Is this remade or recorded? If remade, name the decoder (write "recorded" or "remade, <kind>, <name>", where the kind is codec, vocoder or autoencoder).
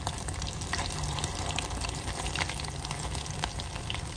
recorded